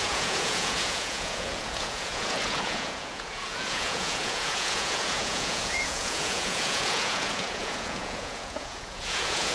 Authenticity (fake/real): fake